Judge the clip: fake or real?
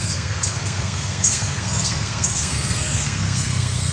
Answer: fake